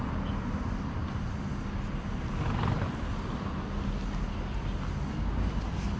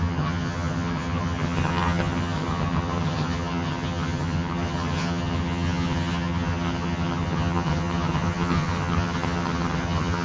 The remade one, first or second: second